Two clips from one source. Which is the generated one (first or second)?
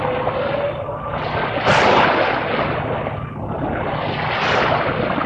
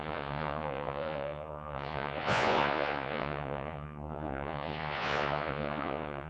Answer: second